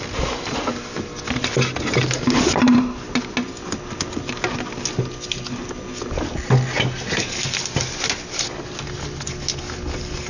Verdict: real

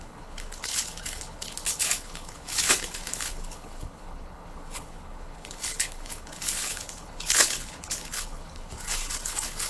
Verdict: fake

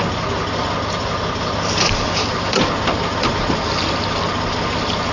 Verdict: real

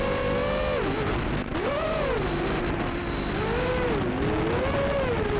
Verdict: real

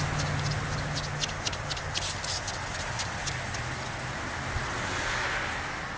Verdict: real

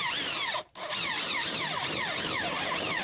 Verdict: real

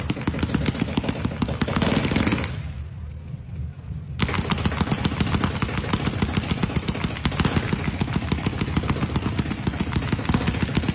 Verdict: real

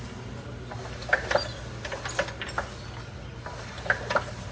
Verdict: real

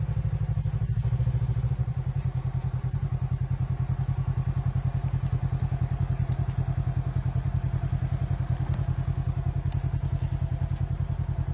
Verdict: real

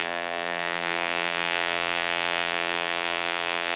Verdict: fake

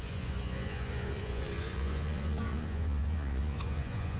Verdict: fake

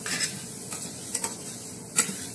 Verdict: fake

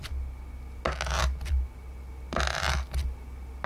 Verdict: real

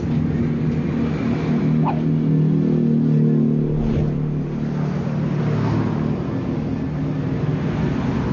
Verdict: real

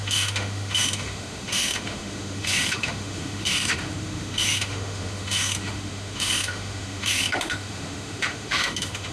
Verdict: fake